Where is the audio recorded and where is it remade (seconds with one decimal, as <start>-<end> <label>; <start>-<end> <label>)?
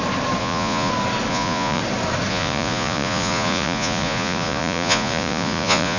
0.0-0.4 recorded; 0.4-0.9 remade; 0.9-1.3 recorded; 1.3-1.8 remade; 1.8-2.3 recorded; 2.3-6.0 remade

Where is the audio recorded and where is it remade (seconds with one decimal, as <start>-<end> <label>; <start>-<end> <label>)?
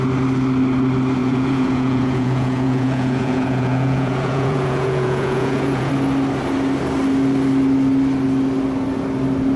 0.0-1.2 recorded; 1.2-5.9 remade; 5.9-9.6 recorded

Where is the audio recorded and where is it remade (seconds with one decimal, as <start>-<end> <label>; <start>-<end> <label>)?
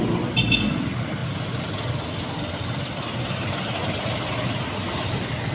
0.0-5.5 recorded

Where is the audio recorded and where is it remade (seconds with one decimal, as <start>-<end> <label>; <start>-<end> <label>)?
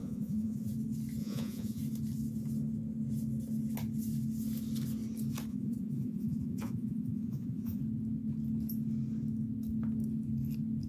0.0-0.7 remade; 0.7-1.2 recorded; 1.2-1.8 remade; 1.8-5.5 recorded; 5.5-7.8 remade; 7.8-10.9 recorded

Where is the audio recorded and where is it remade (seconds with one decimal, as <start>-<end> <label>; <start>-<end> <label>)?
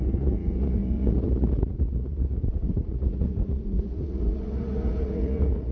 0.0-5.7 remade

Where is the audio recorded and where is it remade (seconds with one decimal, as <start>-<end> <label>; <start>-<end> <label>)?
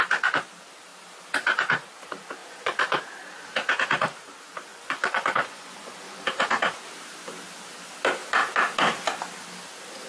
0.0-2.4 recorded; 2.4-3.0 remade; 3.0-4.7 recorded; 4.7-6.2 remade; 6.2-10.1 recorded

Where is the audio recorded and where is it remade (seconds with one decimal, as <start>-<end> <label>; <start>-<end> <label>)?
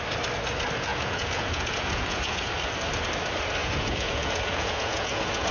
0.0-0.9 recorded; 0.9-2.5 remade; 2.5-3.6 recorded; 3.6-5.5 remade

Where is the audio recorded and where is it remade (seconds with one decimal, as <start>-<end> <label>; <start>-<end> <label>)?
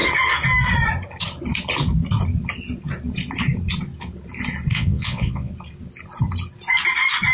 0.0-4.7 recorded; 4.7-5.5 remade; 5.5-7.3 recorded